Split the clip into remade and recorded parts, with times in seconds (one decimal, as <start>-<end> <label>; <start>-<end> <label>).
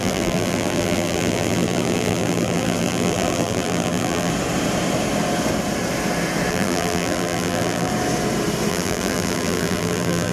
0.0-4.3 remade; 4.3-6.5 recorded; 6.5-7.9 remade; 7.9-8.7 recorded; 8.7-10.3 remade